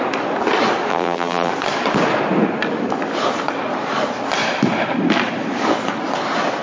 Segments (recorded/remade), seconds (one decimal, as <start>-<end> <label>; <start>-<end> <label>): 0.0-0.9 recorded; 0.9-1.5 remade; 1.5-6.6 recorded